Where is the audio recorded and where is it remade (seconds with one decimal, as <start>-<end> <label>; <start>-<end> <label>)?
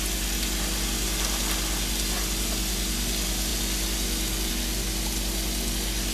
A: 0.0-6.1 recorded